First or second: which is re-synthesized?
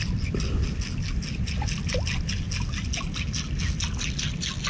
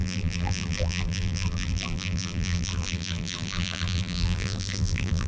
second